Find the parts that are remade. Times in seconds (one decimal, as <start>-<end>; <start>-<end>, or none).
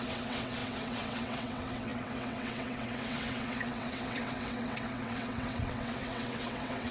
0.0-6.9